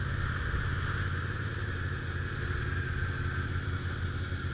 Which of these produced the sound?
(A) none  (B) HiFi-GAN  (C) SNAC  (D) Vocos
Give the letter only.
A